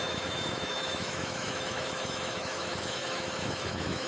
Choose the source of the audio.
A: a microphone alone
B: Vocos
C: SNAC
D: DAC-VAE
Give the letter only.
D